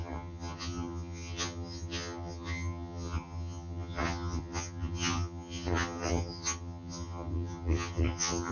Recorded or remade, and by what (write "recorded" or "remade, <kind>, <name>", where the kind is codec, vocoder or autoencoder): remade, vocoder, HiFi-GAN